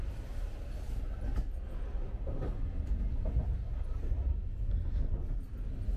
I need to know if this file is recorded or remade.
recorded